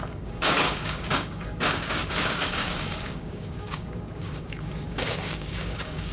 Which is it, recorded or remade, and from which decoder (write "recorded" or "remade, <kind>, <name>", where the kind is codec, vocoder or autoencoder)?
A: remade, codec, DAC